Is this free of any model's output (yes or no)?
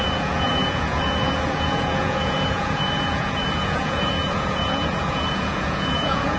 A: no